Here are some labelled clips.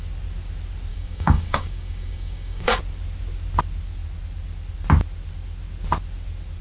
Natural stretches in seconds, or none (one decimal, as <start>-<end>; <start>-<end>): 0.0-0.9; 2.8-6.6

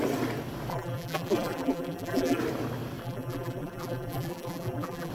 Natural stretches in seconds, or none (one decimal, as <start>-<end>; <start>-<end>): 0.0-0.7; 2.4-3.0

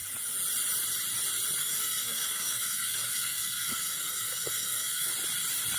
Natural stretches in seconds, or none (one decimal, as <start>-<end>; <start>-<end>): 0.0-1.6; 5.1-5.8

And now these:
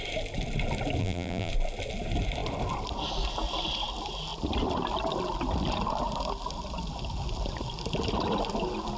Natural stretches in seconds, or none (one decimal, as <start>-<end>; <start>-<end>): 0.0-1.0; 1.5-9.0